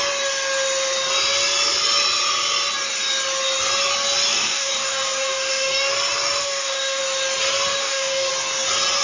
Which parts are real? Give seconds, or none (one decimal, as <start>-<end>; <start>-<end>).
0.0-4.3; 5.9-6.4; 7.0-7.8; 8.3-9.0